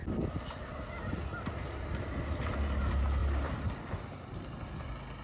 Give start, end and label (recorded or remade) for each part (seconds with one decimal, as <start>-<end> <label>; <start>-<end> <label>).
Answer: 0.0-5.2 recorded